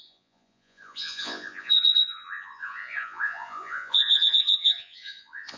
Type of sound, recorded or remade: remade